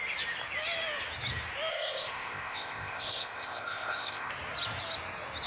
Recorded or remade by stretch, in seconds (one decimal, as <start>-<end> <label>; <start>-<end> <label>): 0.0-1.7 recorded; 1.7-4.3 remade; 4.3-5.5 recorded